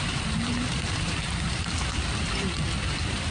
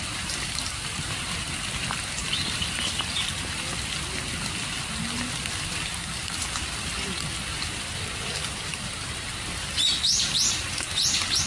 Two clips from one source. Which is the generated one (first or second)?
first